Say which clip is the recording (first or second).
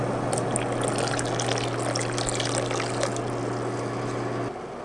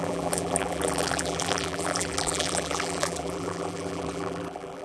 first